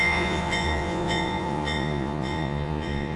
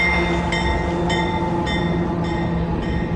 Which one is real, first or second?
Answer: second